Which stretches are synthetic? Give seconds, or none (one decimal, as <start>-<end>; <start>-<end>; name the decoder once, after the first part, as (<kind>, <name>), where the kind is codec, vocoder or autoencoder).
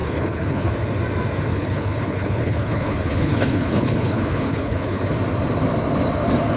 0.0-0.7 (codec, HILCodec); 1.5-5.0